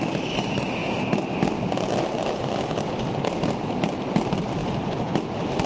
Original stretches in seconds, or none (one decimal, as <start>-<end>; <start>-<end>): 0.0-5.7